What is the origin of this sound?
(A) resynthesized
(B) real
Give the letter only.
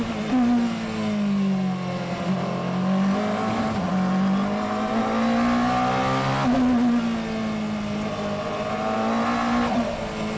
B